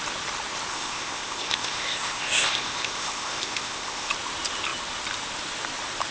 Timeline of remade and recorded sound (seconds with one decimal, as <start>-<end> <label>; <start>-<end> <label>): 0.0-0.7 recorded; 0.7-4.1 remade; 4.1-6.1 recorded